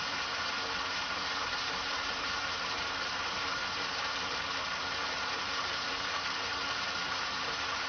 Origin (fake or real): fake